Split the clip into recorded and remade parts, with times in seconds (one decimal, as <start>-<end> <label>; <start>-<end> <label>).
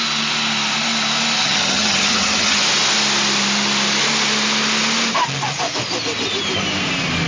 0.0-1.4 recorded; 1.4-2.6 remade; 2.6-7.3 recorded